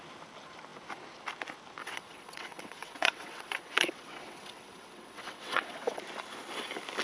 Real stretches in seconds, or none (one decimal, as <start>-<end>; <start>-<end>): 0.0-1.8; 6.0-7.0